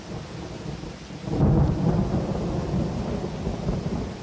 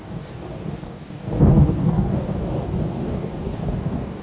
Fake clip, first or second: second